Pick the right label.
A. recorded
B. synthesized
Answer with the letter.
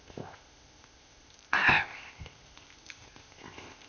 B